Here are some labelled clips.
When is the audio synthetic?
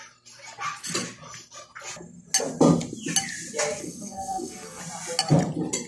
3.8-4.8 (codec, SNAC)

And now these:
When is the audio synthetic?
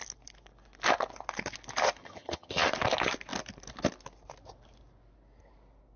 2.0-2.7 (vocoder, HiFi-GAN)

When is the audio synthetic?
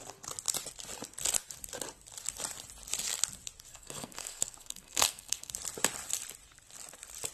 3.7-5.5 (codec, SNAC)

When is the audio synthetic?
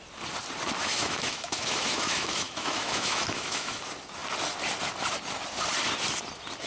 0.8-3.8 (autoencoder, DAC-VAE)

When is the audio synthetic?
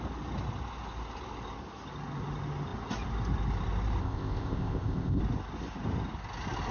4.0-5.2 (codec, ZipCodec)